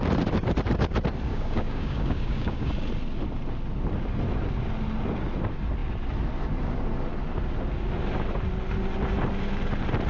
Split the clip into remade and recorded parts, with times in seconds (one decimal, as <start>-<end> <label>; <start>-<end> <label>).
0.0-1.3 recorded; 1.3-2.7 remade; 2.7-10.1 recorded